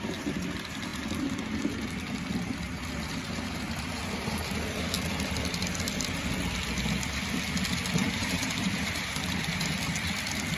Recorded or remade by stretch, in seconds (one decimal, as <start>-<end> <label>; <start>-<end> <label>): 0.0-8.0 recorded; 8.0-9.6 remade; 9.6-10.6 recorded